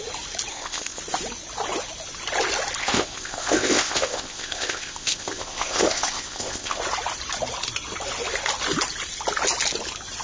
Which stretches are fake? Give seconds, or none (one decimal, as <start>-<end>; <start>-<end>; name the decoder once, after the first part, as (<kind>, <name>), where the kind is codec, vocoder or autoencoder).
0.5-1.0 (codec, ZipCodec); 2.8-6.8

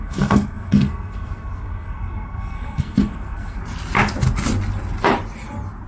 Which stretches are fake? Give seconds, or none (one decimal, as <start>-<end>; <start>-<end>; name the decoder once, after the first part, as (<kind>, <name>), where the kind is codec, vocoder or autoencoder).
0.0-3.6 (codec, SNAC)

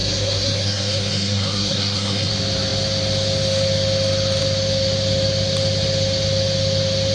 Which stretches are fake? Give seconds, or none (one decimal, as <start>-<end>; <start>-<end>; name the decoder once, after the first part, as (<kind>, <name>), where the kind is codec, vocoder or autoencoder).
0.0-2.3 (codec, SNAC)